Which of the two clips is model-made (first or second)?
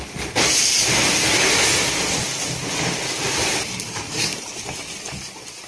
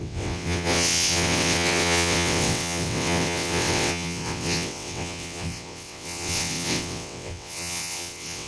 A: second